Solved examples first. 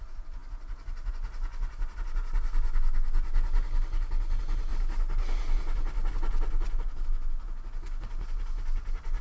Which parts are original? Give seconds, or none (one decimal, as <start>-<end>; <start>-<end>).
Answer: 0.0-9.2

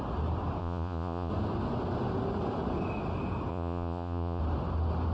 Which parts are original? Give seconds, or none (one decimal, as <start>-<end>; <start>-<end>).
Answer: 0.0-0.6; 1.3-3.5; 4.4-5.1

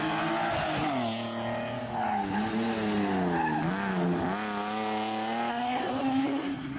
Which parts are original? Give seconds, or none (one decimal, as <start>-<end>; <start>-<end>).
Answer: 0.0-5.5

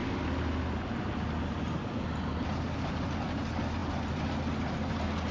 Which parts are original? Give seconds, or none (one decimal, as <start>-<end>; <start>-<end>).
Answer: 0.0-5.3

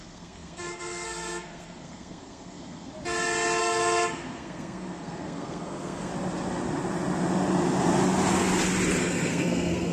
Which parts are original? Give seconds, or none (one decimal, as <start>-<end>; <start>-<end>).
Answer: 2.9-3.6; 6.1-9.0